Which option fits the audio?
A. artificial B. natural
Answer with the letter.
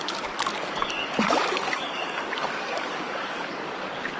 A